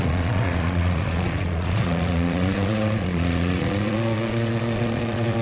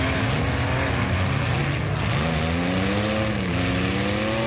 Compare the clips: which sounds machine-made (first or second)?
first